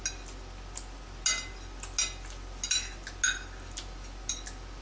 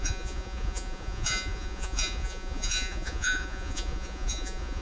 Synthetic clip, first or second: second